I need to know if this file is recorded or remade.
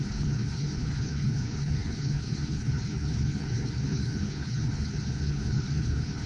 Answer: remade